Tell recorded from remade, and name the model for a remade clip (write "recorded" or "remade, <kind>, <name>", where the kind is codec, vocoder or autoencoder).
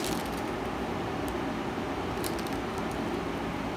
recorded